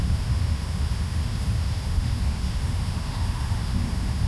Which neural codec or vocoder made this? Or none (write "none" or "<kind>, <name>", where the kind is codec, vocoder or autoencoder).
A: autoencoder, DAC-VAE